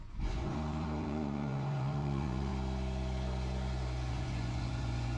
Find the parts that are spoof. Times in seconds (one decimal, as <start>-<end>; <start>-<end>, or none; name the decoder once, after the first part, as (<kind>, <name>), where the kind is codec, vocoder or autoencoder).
0.0-2.5 (vocoder, Vocos); 4.1-5.2